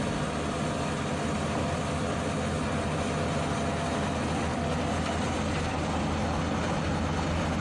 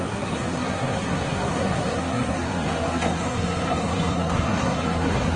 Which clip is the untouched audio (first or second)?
first